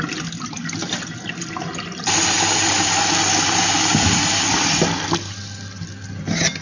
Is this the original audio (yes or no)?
yes